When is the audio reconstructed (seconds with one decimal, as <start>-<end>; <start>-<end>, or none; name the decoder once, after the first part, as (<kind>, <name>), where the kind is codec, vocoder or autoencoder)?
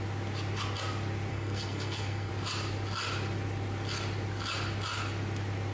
1.3-2.3 (codec, SNAC)